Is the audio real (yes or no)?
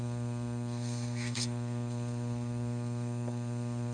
no